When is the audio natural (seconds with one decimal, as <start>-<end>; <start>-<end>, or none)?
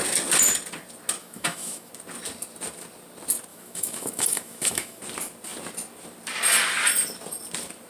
0.0-1.2; 1.9-3.5; 5.0-7.9